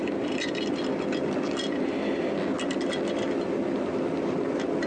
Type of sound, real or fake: real